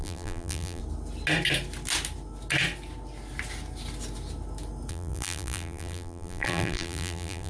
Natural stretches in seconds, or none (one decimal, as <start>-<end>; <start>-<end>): 0.8-4.9